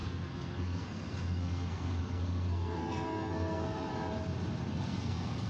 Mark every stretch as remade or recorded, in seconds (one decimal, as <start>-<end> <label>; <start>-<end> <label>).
0.0-3.9 remade; 3.9-4.7 recorded; 4.7-5.5 remade